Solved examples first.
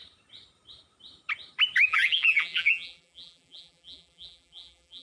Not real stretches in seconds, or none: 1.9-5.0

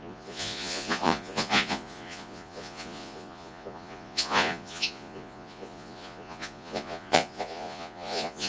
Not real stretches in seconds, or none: 0.0-8.5

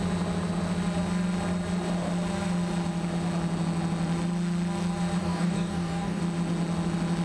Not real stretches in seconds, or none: 5.2-6.2

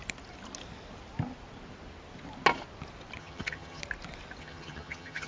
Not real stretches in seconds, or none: 3.2-3.8; 4.4-5.3

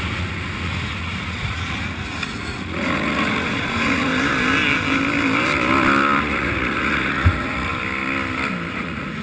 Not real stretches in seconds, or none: 0.0-4.1; 6.2-7.7; 8.7-9.2

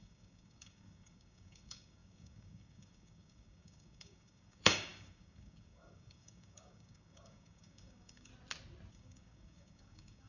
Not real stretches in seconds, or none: 0.0-8.3; 8.9-10.3

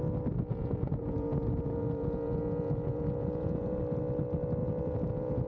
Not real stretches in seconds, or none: 0.5-3.8; 4.6-5.5

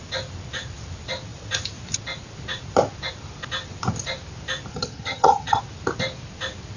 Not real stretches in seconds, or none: 4.7-5.6